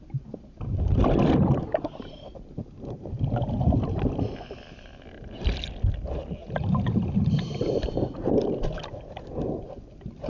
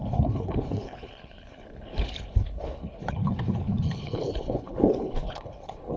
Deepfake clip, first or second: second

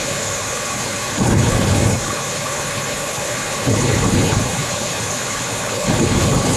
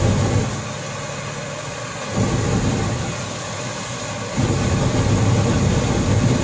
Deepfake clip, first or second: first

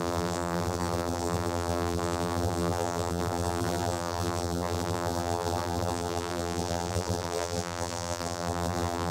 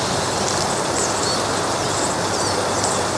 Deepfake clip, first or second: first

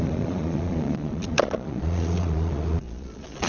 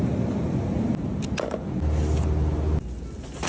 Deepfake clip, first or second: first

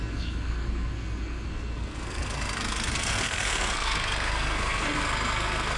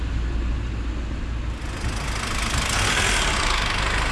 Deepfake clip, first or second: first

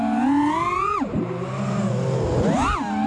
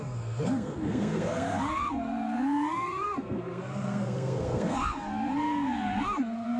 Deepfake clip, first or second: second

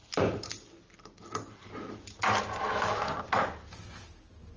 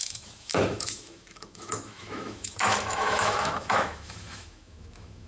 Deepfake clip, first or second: second